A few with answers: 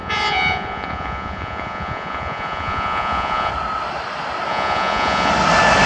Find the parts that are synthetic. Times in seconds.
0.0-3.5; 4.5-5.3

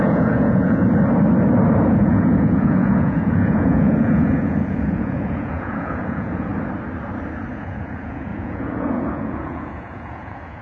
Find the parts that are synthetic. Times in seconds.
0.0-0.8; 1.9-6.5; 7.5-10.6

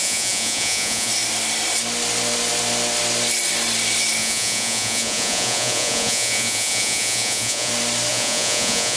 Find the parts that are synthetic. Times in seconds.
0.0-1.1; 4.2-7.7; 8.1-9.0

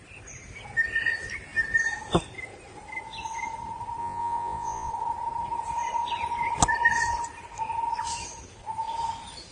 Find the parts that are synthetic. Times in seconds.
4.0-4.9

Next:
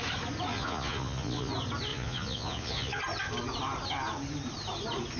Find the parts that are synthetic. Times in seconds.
0.5-1.5; 1.9-3.0

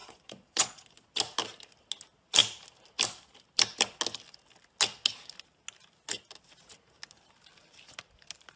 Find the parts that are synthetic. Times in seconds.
0.0-0.9

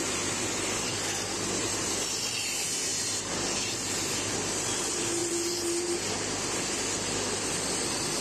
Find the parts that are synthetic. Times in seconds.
none